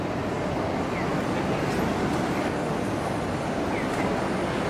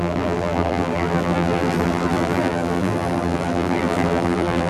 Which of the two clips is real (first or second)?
first